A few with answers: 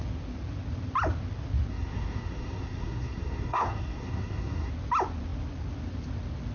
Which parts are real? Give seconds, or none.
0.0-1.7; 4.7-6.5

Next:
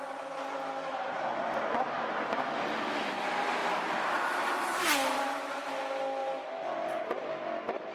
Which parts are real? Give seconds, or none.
0.0-3.6; 5.7-6.2; 7.0-7.9